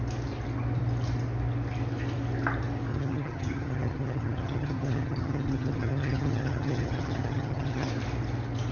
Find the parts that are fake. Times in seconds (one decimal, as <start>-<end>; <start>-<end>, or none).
2.9-7.9